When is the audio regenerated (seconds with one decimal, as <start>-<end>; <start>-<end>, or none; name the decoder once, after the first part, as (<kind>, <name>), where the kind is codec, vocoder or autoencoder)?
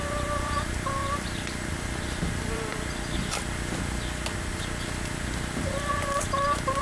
0.0-2.7 (vocoder, BigVGAN v2)